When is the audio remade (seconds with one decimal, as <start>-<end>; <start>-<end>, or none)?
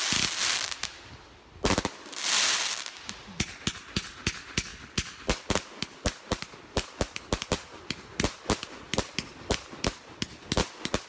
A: none